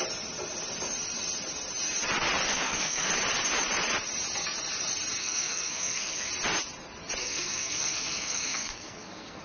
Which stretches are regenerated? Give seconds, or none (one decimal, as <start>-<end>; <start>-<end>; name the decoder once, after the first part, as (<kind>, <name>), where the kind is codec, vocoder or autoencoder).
2.5-3.1 (codec, SNAC); 5.2-6.3; 7.2-9.4